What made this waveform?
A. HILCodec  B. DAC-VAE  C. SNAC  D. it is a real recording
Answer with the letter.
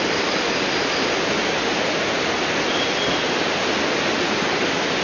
D